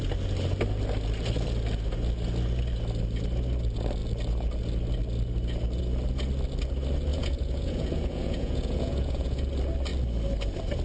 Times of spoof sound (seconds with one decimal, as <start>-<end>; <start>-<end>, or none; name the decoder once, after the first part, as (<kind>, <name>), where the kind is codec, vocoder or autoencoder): 7.1-9.4 (vocoder, Vocos)